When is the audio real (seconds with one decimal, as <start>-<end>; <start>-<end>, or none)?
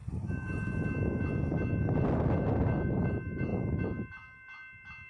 0.0-5.1